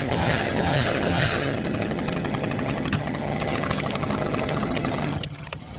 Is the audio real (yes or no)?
no